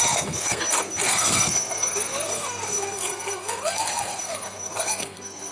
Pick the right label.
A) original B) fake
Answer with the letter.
B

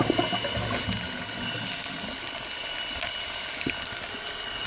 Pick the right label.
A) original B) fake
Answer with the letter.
A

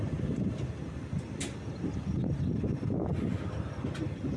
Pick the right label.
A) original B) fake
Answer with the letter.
A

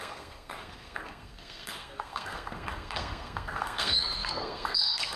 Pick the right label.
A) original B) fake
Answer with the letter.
B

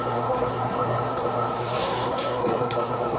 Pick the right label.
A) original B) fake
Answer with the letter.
B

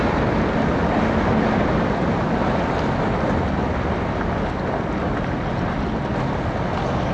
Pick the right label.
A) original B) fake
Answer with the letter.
A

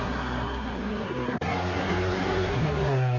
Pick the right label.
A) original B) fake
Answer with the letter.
B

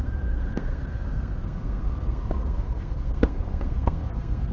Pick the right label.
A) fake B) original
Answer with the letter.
A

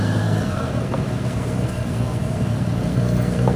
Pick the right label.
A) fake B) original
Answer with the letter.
A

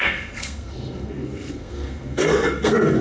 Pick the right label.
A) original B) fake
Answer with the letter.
B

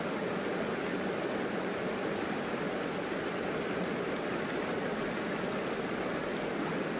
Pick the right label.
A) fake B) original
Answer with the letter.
B